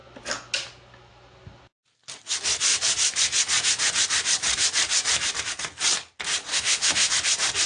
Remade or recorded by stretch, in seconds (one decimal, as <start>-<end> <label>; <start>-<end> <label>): 0.0-6.5 recorded; 6.5-7.1 remade; 7.1-7.7 recorded